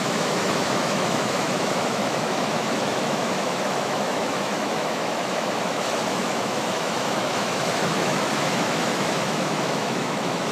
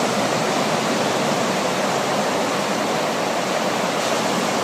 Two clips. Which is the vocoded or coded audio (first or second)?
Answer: first